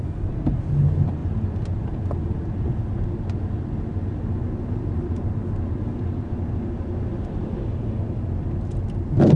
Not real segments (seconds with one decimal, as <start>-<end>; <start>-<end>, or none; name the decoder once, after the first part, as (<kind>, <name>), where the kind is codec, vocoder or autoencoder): none